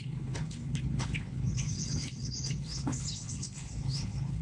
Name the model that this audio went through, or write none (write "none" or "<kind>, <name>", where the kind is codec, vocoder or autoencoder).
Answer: codec, HILCodec